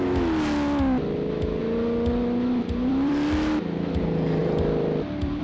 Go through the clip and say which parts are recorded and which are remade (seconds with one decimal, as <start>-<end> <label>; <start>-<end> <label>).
0.0-1.6 recorded; 1.6-3.9 remade; 3.9-4.4 recorded; 4.4-5.4 remade